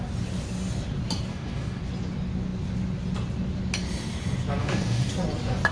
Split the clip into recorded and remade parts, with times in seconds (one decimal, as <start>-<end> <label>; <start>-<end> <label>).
0.0-1.3 recorded; 1.3-1.8 remade; 1.8-4.6 recorded; 4.6-5.1 remade; 5.1-5.7 recorded